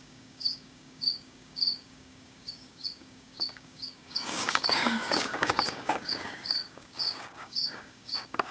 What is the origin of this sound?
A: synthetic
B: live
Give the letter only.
A